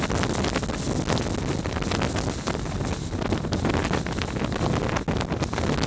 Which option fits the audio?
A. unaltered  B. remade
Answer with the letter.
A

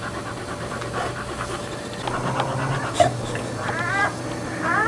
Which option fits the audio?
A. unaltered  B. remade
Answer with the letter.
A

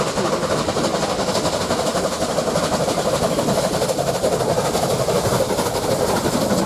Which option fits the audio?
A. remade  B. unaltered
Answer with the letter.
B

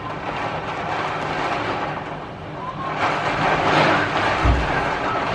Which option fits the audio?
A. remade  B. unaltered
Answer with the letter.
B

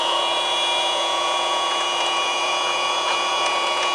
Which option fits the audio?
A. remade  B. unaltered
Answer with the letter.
A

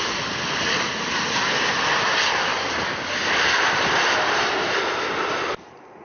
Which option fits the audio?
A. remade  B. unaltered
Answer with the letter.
B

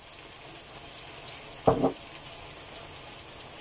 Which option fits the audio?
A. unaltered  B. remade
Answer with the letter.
A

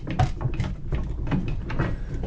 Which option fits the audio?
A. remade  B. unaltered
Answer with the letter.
B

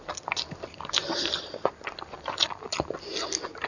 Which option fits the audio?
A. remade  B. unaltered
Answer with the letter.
B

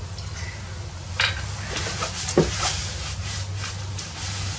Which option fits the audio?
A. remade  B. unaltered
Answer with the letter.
B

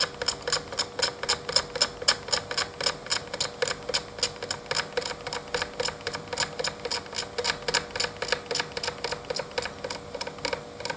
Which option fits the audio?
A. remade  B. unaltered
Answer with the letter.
B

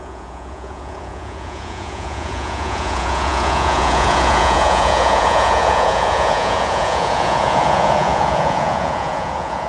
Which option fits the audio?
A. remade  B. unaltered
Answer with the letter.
A